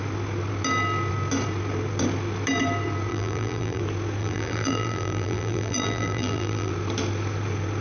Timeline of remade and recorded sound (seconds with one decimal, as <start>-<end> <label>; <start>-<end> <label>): 0.0-3.1 recorded; 3.1-3.8 remade; 3.8-4.2 recorded; 4.2-6.7 remade; 6.7-7.8 recorded